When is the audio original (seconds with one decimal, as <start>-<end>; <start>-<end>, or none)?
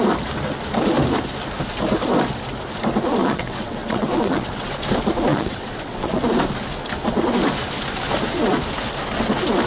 0.0-3.2; 4.7-5.3; 6.2-9.7